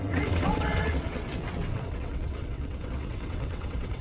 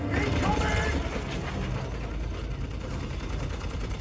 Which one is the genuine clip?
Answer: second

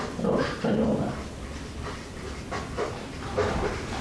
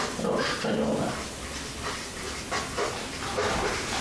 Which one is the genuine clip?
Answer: second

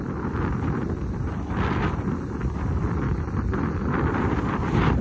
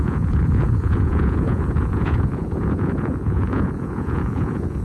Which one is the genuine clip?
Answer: first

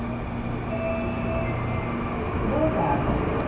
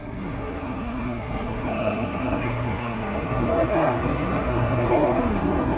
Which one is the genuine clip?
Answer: first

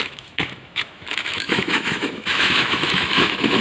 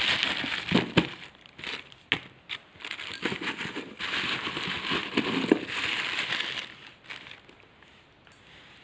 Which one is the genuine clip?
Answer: second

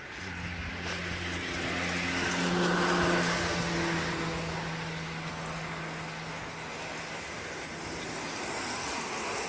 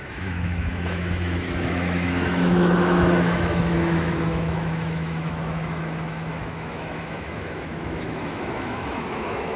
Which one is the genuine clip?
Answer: first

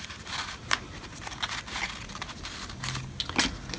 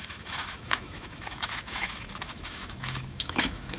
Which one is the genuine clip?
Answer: first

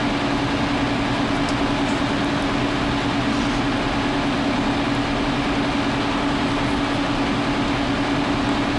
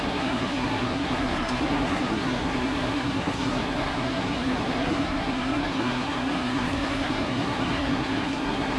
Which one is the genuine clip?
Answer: first